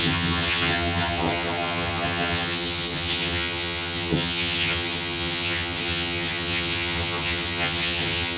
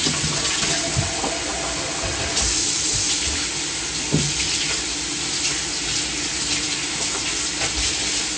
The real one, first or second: second